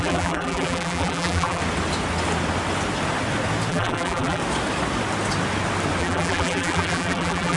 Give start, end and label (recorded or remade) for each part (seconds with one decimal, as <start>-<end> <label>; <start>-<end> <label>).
0.0-1.6 remade; 1.6-3.7 recorded; 3.7-4.4 remade; 4.4-6.0 recorded; 6.0-7.6 remade